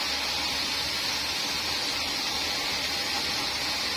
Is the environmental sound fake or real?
real